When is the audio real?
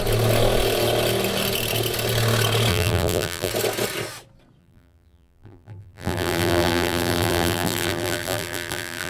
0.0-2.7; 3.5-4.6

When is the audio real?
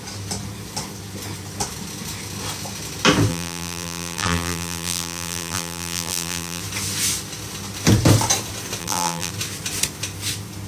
0.0-3.3; 6.6-8.8; 9.3-10.7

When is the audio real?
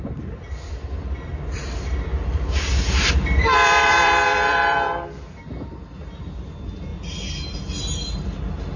6.9-8.1